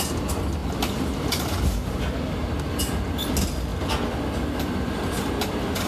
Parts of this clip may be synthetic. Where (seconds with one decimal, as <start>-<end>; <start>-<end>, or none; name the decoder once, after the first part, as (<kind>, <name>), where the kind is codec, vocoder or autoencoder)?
none